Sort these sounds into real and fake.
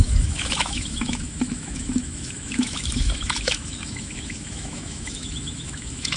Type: fake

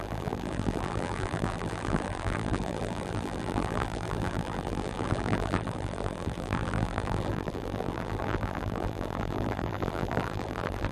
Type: fake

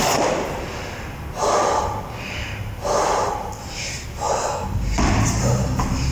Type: real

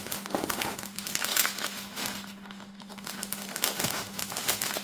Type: fake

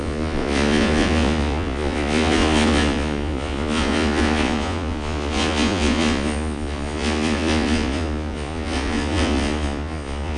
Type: fake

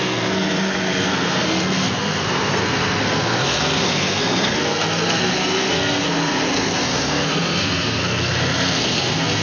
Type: fake